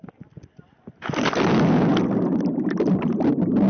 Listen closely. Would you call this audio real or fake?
real